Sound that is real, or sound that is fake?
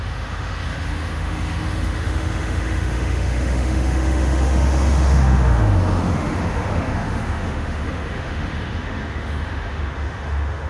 fake